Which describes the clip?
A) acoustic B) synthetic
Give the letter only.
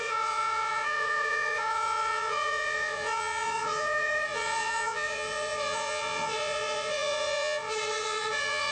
B